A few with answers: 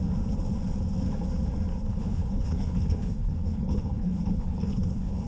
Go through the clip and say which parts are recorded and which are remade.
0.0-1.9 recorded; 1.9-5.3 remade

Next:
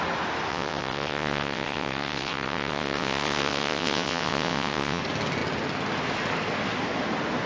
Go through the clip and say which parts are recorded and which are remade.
0.0-0.5 recorded; 0.5-5.0 remade; 5.0-7.5 recorded

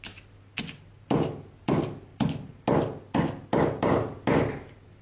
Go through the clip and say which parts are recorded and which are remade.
0.0-5.0 recorded

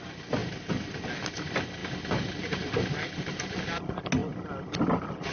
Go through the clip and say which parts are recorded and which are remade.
0.0-5.3 recorded

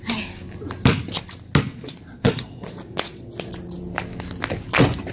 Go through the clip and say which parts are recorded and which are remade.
0.0-1.7 recorded; 1.7-3.5 remade; 3.5-5.1 recorded

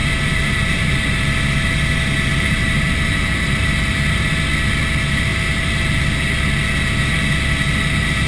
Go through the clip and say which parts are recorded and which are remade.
0.0-1.3 remade; 1.3-2.3 recorded; 2.3-4.3 remade; 4.3-5.3 recorded; 5.3-6.0 remade; 6.0-8.3 recorded

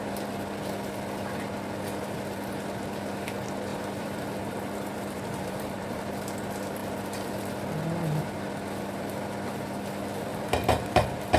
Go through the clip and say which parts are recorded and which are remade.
0.0-3.7 recorded; 3.7-6.0 remade; 6.0-10.3 recorded; 10.3-11.4 remade